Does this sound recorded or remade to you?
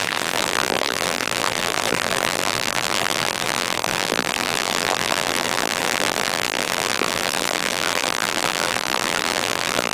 remade